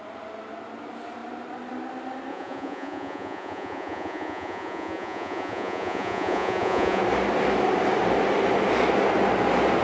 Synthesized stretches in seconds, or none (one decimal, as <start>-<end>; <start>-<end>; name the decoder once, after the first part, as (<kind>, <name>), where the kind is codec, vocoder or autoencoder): 2.3-7.0 (vocoder, Vocos)